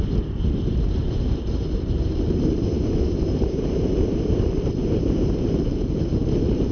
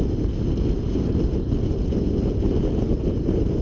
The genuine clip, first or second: second